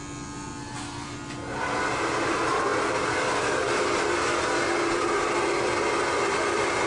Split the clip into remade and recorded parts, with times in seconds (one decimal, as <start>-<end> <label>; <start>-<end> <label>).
0.0-6.9 recorded

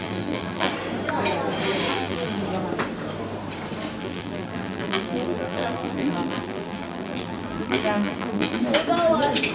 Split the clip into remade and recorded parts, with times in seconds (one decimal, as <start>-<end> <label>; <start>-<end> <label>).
0.0-0.7 remade; 0.7-1.9 recorded; 1.9-2.4 remade; 2.4-4.0 recorded; 4.0-8.6 remade; 8.6-9.5 recorded